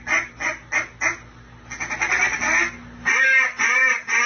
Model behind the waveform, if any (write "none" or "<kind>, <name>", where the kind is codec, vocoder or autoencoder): none